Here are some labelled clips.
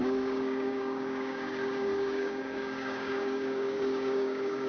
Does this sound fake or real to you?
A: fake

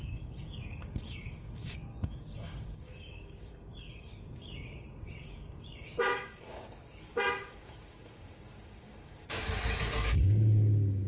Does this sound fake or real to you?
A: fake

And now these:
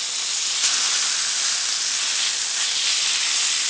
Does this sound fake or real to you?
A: real